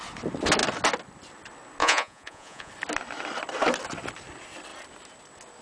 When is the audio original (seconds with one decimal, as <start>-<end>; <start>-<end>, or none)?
0.0-1.8; 2.7-5.6